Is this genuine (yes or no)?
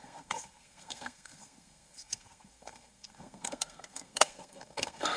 no